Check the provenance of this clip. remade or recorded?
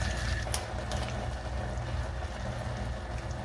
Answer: recorded